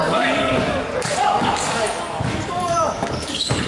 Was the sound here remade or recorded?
remade